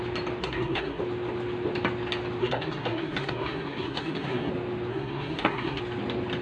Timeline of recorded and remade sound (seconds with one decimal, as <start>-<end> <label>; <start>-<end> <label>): 0.0-0.4 recorded; 0.4-1.0 remade; 1.0-2.4 recorded; 2.4-4.5 remade; 4.5-4.9 recorded; 4.9-5.8 remade; 5.8-6.4 recorded